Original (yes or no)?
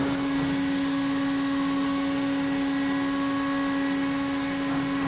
yes